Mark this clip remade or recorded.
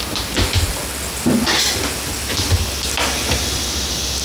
recorded